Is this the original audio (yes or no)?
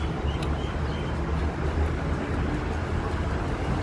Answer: yes